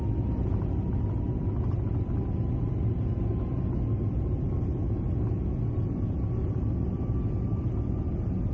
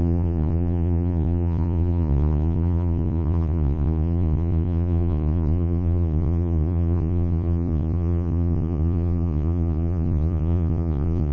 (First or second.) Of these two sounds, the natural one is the first